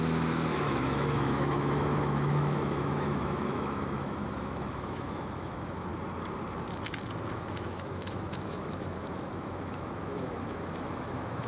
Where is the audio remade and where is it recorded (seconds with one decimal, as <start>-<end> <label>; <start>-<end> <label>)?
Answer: 0.0-5.9 remade; 5.9-7.3 recorded; 7.3-11.5 remade